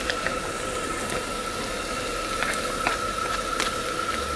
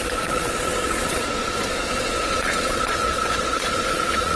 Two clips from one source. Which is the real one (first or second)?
first